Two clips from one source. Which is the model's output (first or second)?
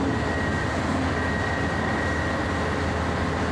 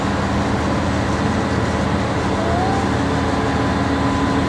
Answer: first